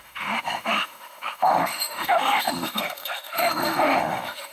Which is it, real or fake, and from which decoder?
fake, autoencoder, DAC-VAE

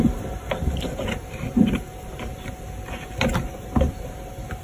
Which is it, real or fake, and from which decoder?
real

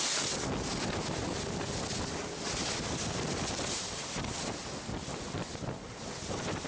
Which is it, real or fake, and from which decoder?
real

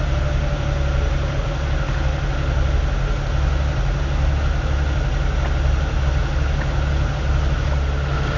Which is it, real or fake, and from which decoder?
real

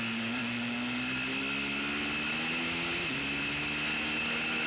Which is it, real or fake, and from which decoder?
real